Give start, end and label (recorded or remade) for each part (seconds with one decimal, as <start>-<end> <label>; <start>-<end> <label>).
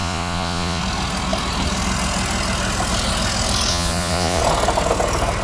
0.0-0.8 remade; 0.8-3.7 recorded; 3.7-4.4 remade; 4.4-5.4 recorded